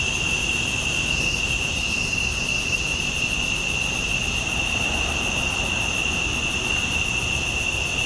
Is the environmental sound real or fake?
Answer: real